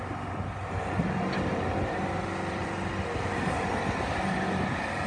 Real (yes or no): yes